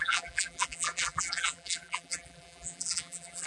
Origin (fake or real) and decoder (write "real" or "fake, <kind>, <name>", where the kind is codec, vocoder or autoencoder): fake, vocoder, BigVGAN v2